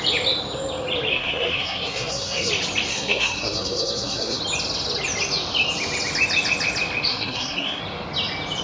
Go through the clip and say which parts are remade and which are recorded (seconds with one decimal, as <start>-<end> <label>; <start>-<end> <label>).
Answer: 0.0-1.1 recorded; 1.1-2.5 remade; 2.5-2.9 recorded; 2.9-4.4 remade; 4.4-7.1 recorded; 7.1-7.8 remade; 7.8-8.6 recorded